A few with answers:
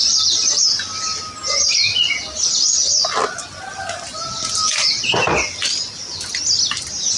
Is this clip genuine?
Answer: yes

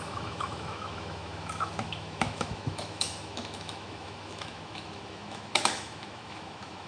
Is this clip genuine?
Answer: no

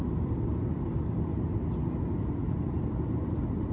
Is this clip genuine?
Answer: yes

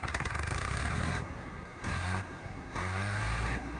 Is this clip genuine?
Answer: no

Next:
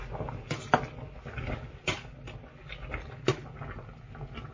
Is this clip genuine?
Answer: yes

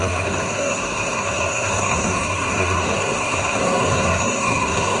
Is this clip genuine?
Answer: no